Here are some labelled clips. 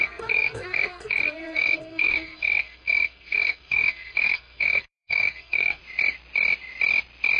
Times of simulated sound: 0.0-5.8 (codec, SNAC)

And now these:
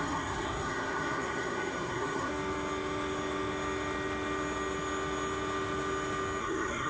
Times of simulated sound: 0.0-2.3 (codec, SNAC); 6.4-6.9

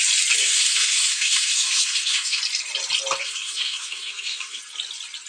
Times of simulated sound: 0.4-2.4 (codec, SNAC); 3.2-4.6

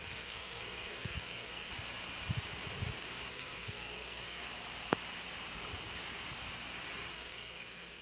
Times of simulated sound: 0.0-1.7 (codec, SNAC); 3.3-4.4; 7.1-8.0